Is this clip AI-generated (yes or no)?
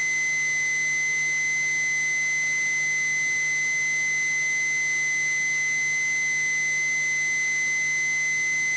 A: no